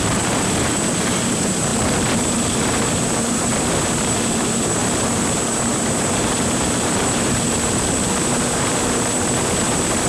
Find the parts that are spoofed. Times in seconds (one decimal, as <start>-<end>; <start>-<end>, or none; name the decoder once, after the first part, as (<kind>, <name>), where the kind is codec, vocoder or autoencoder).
0.0-10.1 (vocoder, BigVGAN v2)